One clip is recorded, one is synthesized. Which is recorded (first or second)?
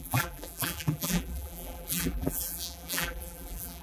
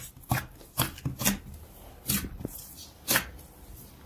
second